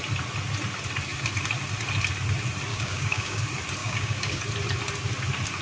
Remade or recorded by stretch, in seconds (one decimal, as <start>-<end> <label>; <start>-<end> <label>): 0.0-2.7 recorded; 2.7-3.4 remade; 3.4-3.8 recorded; 3.8-4.4 remade; 4.4-5.6 recorded